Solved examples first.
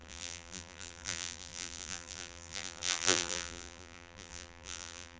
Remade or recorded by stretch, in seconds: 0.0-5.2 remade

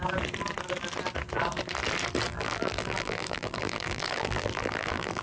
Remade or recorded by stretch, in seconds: 0.0-2.3 recorded; 2.3-5.2 remade

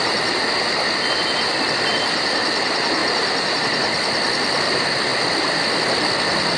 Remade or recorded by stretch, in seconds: 0.0-3.0 recorded; 3.0-3.6 remade; 3.6-6.6 recorded